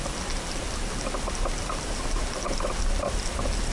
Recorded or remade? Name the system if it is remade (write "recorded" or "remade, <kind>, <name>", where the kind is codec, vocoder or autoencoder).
recorded